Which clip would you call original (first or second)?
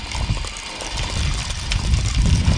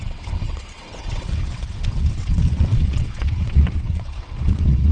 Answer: first